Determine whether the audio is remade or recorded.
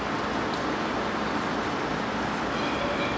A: recorded